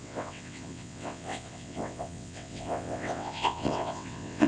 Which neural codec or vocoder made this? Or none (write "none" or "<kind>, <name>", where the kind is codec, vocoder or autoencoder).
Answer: vocoder, WaveNeXt